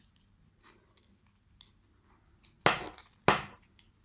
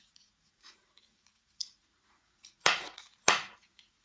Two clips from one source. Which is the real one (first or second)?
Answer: first